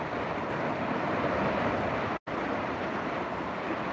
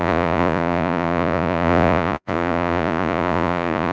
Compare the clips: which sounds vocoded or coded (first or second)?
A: second